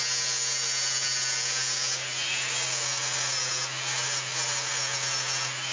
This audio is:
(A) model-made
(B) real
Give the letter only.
B